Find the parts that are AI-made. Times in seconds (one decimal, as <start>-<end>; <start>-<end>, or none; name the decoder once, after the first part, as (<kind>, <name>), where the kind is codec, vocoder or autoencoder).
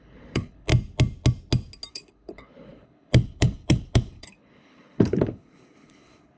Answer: 0.0-0.7 (codec, HILCodec); 1.9-6.4